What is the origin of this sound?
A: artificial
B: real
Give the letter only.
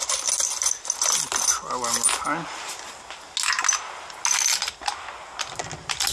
B